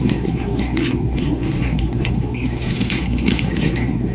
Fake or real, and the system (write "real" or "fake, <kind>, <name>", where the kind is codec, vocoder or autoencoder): fake, codec, SNAC